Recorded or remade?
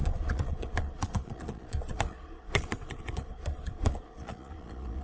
remade